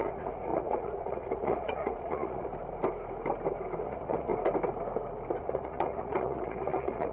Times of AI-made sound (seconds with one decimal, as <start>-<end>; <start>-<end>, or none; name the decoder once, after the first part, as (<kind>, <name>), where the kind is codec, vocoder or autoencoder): 0.0-2.5 (vocoder, Vocos); 3.8-4.3; 5.4-7.1